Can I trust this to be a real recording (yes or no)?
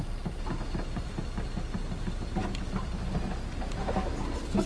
yes